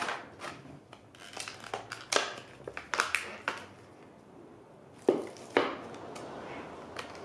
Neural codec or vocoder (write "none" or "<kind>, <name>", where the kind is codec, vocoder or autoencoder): none